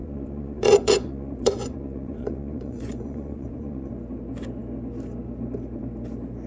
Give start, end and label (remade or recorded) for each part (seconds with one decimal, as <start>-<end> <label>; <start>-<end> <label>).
0.0-3.9 remade; 3.9-6.5 recorded